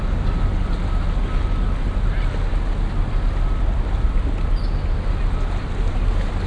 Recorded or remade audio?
recorded